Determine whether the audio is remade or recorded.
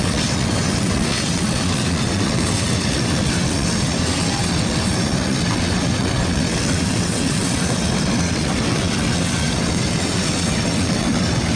remade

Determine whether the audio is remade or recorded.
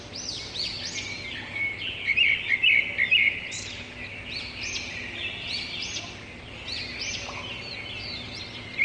recorded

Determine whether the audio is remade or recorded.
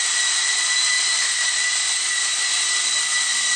recorded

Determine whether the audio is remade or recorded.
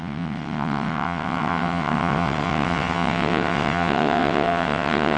remade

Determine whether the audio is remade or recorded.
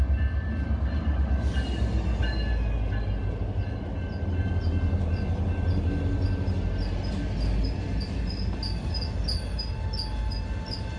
recorded